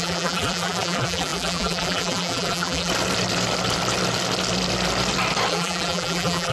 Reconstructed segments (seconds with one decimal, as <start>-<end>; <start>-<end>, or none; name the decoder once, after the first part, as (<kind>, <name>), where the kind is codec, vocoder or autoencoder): 0.0-2.9 (vocoder, BigVGAN v2); 5.5-6.5